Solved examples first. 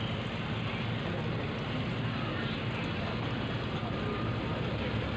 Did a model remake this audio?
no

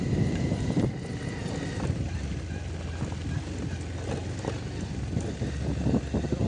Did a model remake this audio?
no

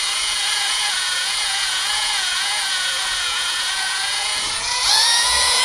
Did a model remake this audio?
yes